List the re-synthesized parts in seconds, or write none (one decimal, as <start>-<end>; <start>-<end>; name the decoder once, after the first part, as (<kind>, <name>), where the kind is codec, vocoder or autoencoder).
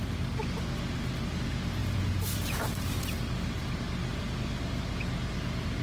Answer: 1.8-2.7 (vocoder, Vocos)